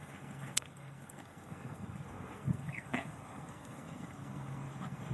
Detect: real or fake fake